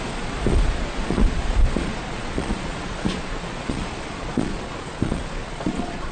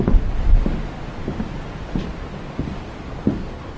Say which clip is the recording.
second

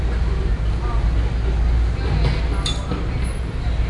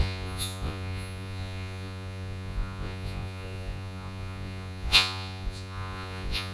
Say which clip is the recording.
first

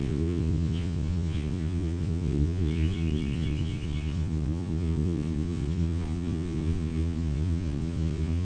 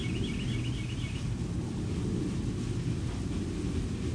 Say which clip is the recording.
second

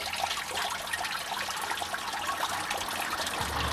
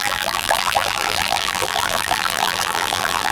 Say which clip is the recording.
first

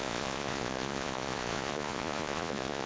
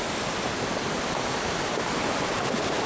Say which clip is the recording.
second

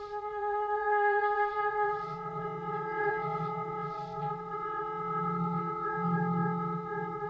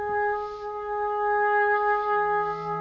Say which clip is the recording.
second